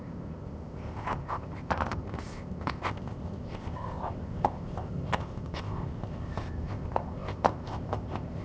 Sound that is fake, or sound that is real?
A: fake